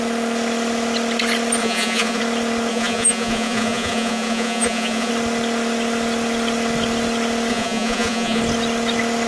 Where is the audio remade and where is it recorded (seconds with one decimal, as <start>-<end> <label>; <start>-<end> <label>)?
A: 0.0-1.6 recorded; 1.6-2.2 remade; 2.2-2.7 recorded; 2.7-5.1 remade; 5.1-7.5 recorded; 7.5-8.4 remade; 8.4-9.3 recorded